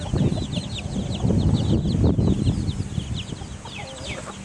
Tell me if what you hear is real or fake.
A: real